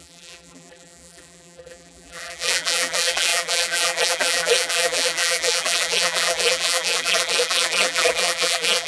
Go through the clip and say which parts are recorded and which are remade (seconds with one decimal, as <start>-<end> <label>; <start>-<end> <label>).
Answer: 0.0-8.9 remade